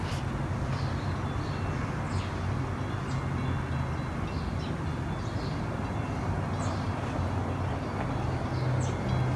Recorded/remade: recorded